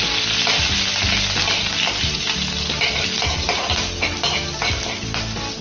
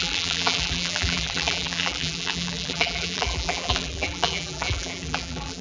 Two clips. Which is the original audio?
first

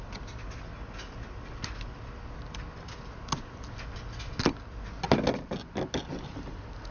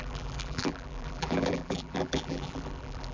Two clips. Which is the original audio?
first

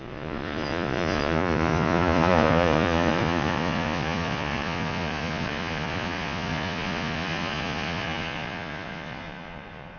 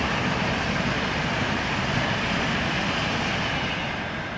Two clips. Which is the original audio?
second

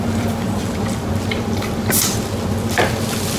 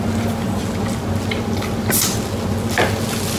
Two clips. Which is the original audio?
second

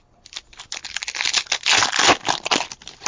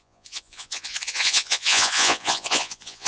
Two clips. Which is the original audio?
first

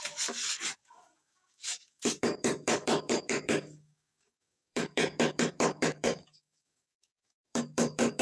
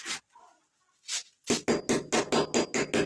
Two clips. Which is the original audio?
second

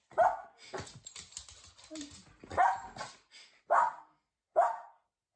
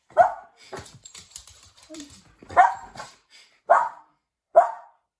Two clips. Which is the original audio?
first